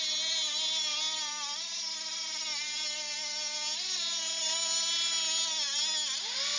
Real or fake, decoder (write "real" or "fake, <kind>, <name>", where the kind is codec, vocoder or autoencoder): real